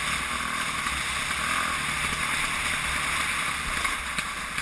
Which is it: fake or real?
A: real